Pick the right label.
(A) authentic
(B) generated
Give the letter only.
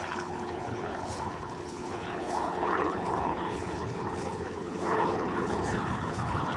B